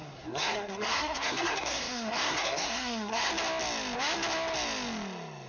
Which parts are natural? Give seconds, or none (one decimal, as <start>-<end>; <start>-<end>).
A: 3.3-5.5